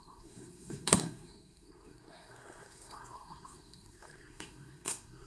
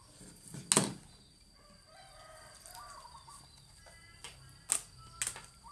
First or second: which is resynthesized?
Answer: first